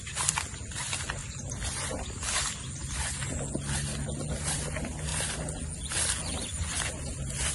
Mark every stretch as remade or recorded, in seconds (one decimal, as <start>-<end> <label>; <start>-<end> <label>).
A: 0.0-7.5 recorded